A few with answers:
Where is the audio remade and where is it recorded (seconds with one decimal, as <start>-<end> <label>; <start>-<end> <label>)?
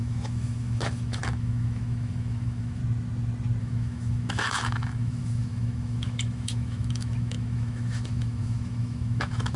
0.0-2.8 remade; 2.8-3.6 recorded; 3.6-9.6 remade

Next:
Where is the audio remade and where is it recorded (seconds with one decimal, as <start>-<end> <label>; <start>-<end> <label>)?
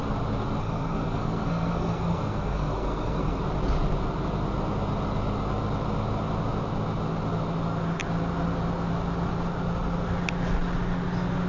0.0-0.6 recorded; 0.6-3.4 remade; 3.4-11.5 recorded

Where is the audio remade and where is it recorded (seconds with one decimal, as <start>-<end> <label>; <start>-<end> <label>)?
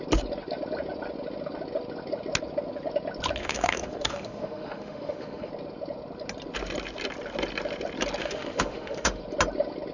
0.0-3.4 recorded; 3.4-5.5 remade; 5.5-8.2 recorded; 8.2-9.2 remade; 9.2-9.9 recorded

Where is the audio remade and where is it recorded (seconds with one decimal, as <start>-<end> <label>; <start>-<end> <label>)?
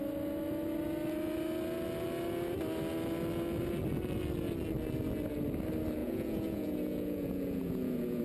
0.0-6.0 recorded; 6.0-8.2 remade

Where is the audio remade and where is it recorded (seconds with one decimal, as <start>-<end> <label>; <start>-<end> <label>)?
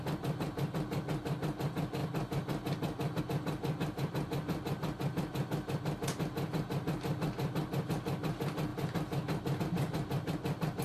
0.0-10.8 recorded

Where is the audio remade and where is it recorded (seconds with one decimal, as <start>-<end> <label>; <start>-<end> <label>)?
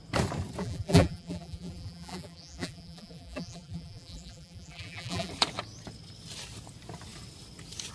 0.0-0.6 recorded; 0.6-5.3 remade; 5.3-7.9 recorded